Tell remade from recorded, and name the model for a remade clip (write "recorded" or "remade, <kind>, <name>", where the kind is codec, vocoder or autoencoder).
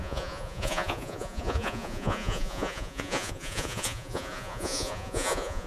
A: remade, vocoder, Vocos